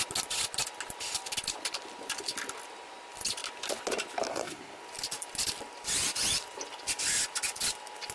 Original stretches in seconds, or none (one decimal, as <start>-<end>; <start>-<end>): 0.0-4.3; 4.8-8.1